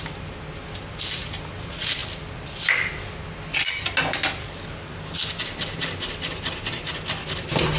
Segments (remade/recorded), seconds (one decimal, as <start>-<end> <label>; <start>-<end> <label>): 0.0-4.4 recorded; 4.4-5.4 remade; 5.4-7.8 recorded